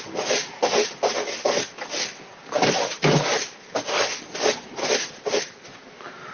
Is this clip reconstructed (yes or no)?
no